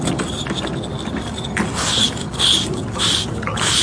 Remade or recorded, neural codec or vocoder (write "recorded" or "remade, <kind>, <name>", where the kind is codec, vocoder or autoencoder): recorded